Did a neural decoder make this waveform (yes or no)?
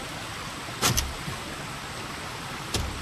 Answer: no